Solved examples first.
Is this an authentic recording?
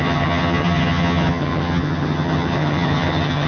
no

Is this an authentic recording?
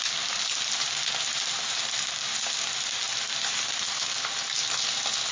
yes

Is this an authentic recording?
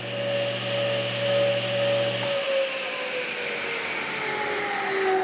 yes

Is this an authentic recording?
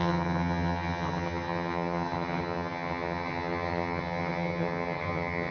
no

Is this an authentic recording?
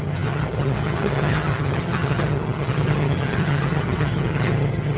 no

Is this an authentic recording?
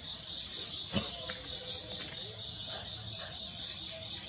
yes